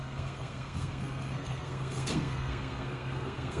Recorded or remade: remade